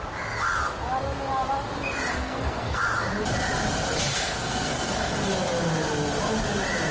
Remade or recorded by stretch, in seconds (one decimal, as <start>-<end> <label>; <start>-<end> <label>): 0.0-2.1 recorded; 2.1-2.8 remade; 2.8-4.1 recorded; 4.1-5.3 remade; 5.3-6.9 recorded